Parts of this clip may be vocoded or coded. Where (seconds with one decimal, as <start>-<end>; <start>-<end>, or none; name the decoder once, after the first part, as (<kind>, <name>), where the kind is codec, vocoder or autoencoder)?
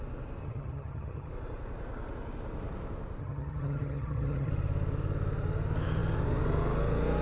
0.4-1.3 (vocoder, HiFi-GAN); 3.2-4.5